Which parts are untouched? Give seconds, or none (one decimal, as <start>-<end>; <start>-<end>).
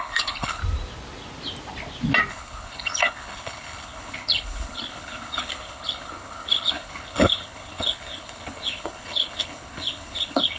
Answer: 0.6-2.3